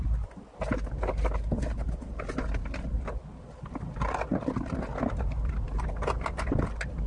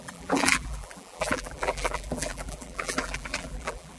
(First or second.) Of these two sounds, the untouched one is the first